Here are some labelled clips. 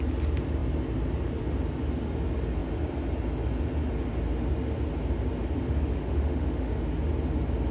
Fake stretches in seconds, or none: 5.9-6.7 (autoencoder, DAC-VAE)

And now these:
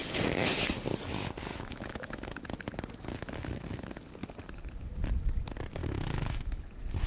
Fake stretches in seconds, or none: 1.5-2.4 (autoencoder, DAC-VAE); 5.8-6.6

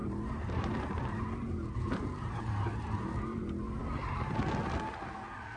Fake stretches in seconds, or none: 0.0-3.8 (vocoder, BigVGAN v2)

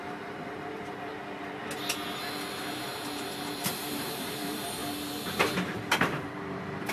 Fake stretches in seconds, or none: 0.0-1.1 (vocoder, BigVGAN v2); 2.6-4.8; 5.3-6.9

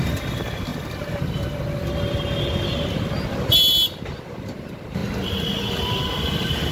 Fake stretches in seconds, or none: none